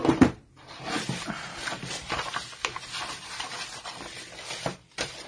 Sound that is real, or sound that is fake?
fake